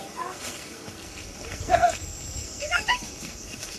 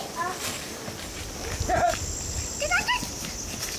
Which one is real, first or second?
second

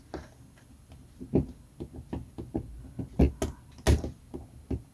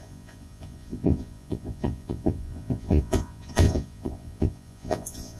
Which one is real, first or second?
first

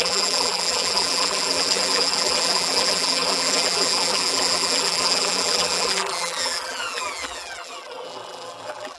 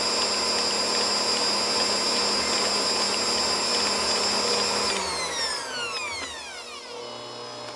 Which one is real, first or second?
second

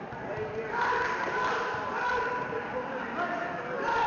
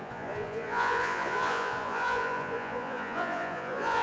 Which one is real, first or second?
first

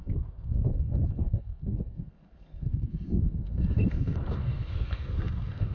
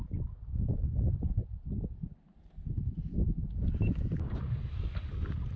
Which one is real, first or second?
second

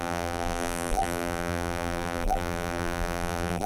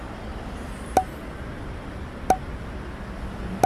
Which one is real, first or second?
second